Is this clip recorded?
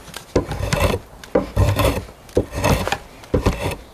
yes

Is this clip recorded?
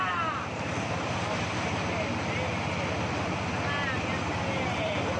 yes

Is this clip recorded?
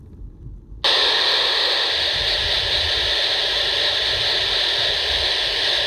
yes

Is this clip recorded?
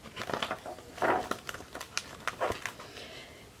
yes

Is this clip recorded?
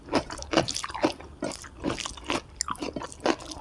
yes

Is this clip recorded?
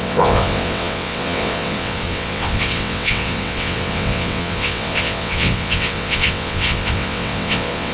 no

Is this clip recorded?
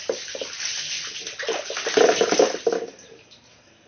yes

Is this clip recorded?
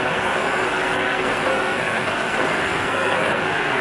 no